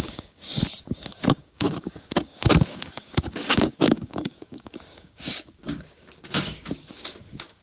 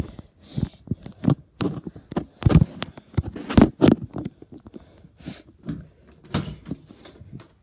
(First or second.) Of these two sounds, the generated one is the first